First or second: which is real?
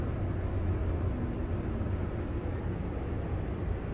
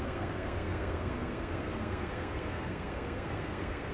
first